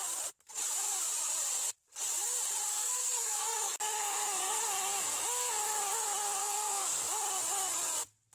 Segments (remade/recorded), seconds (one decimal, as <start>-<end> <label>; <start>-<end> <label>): 0.0-2.7 recorded; 2.7-4.6 remade; 4.6-6.4 recorded; 6.4-7.0 remade; 7.0-8.3 recorded